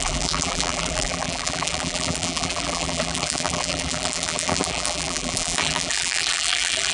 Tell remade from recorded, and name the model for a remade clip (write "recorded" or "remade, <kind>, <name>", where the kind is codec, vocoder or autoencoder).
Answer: remade, vocoder, BigVGAN v2